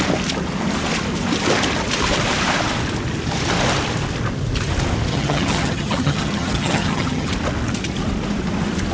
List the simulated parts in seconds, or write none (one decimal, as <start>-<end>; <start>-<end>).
5.1-7.3